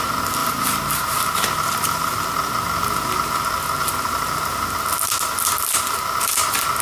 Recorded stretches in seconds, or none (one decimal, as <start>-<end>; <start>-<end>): 0.0-6.8